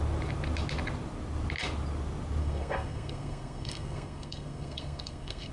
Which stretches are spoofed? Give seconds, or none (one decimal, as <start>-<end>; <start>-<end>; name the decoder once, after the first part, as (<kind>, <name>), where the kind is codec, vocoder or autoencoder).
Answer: 2.4-5.5 (codec, SNAC)